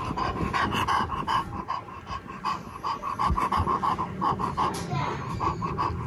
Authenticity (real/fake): real